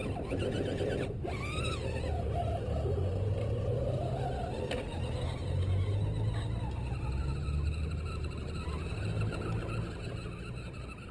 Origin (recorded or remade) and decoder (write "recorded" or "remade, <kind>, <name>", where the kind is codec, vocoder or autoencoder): recorded